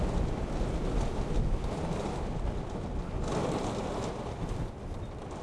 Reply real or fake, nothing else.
real